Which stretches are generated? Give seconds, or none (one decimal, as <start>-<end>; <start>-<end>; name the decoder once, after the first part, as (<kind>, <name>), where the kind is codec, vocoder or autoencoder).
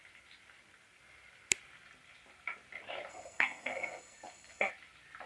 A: 3.1-4.7 (codec, SNAC)